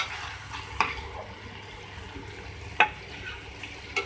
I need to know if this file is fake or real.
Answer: real